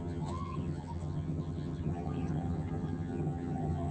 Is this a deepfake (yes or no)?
yes